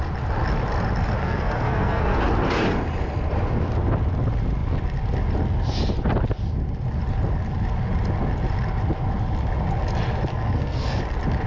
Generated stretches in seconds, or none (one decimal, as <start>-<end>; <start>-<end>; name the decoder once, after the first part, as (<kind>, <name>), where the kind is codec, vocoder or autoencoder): 1.2-2.2 (codec, SNAC); 10.3-11.0